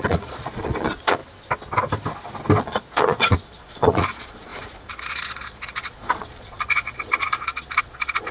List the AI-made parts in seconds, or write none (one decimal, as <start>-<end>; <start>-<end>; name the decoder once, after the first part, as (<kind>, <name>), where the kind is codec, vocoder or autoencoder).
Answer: 0.0-1.2 (vocoder, Vocos); 2.6-8.3